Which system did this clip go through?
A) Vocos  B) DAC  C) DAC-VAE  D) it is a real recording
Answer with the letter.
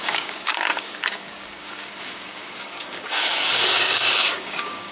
B